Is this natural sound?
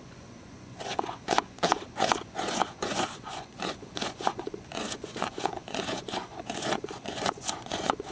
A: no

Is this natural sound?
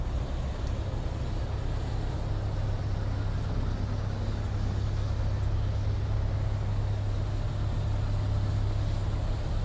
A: yes